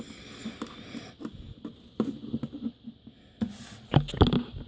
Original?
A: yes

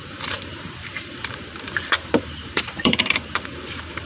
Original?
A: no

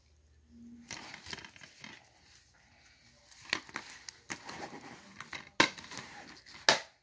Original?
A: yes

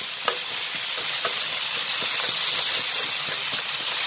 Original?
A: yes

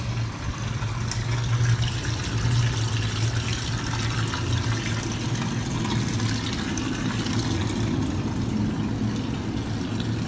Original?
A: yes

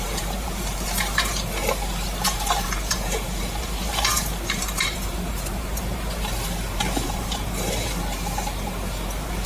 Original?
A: no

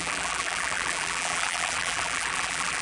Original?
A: no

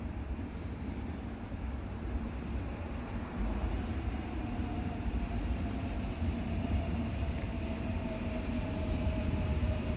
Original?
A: no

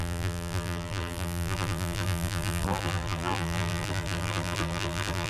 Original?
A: no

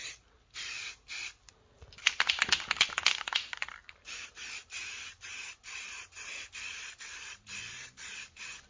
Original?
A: no